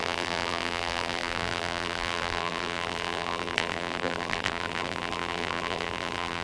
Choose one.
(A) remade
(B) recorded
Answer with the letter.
A